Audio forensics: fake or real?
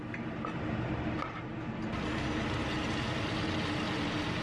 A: real